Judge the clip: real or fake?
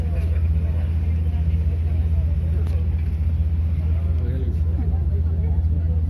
real